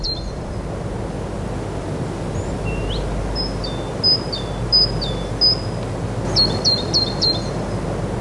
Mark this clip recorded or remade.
recorded